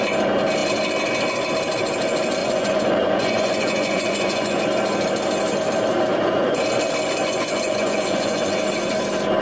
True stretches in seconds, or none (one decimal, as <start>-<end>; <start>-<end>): 0.0-2.4; 4.6-6.1; 6.6-7.2; 8.6-9.4